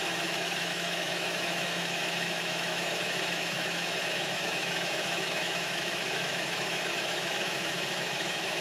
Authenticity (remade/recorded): remade